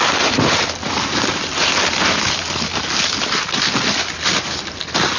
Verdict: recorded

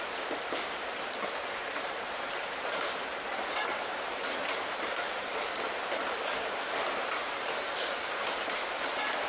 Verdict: remade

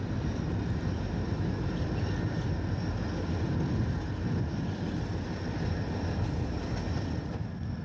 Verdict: recorded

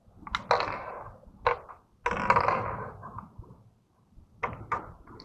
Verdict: recorded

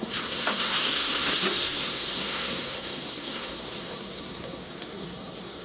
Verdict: remade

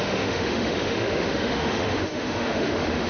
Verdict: remade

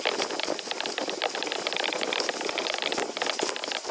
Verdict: recorded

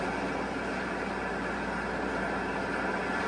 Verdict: recorded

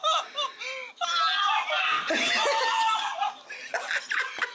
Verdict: recorded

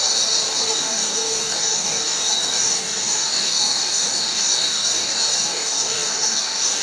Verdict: remade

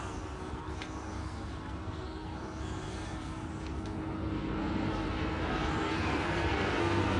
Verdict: remade